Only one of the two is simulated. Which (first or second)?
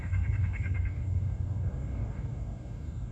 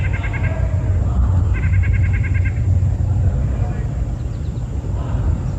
first